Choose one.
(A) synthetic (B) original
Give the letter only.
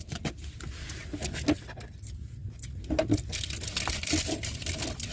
B